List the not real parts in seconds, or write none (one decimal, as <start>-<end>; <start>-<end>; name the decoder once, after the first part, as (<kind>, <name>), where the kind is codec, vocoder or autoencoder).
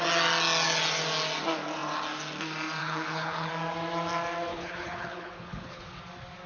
2.8-3.5 (codec, HILCodec); 4.5-6.0